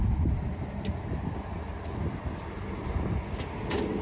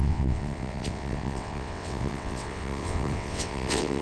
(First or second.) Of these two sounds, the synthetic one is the second